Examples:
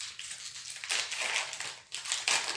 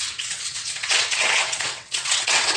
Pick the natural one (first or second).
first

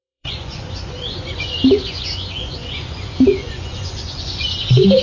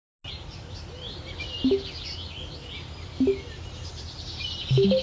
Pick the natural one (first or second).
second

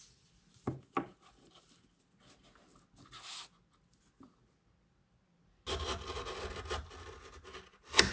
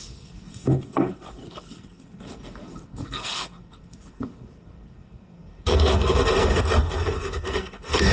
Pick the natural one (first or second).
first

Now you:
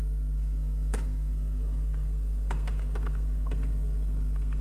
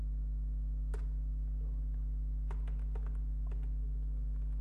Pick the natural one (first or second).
second